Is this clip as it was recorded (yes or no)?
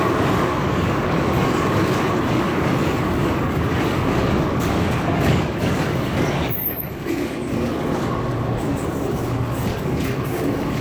no